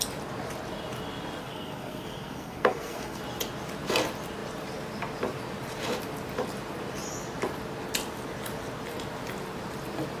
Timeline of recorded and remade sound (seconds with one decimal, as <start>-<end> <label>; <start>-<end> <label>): 0.0-1.4 recorded; 1.4-3.2 remade; 3.2-10.2 recorded